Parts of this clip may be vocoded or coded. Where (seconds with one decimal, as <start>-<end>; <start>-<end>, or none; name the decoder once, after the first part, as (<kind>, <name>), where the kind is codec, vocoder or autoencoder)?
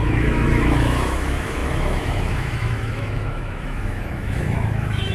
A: 0.0-5.1 (autoencoder, DAC-VAE)